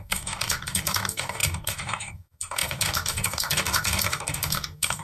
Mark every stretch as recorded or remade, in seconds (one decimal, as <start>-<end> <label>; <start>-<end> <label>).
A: 0.0-5.0 remade